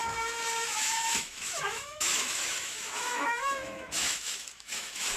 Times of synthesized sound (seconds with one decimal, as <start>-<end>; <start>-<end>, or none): 0.0-5.2